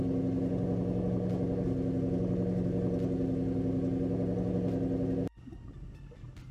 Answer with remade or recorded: recorded